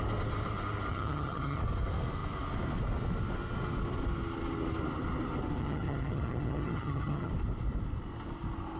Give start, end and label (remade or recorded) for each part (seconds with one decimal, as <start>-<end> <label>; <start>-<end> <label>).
0.0-0.9 recorded; 0.9-1.6 remade; 1.6-5.6 recorded; 5.6-7.3 remade; 7.3-8.8 recorded